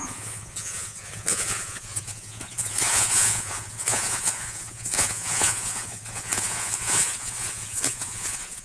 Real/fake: fake